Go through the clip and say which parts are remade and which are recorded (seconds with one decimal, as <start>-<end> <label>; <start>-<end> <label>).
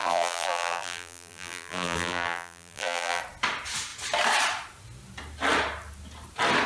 0.0-3.2 remade; 3.2-6.7 recorded